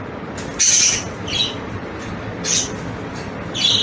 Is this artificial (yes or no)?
no